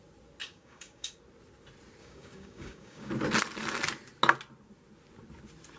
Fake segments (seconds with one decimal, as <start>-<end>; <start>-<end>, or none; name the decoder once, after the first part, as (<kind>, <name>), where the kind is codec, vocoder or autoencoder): 0.4-1.2 (codec, DAC); 2.0-3.1